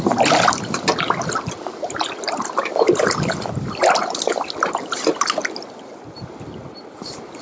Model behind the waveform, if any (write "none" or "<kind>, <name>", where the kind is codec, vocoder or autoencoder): none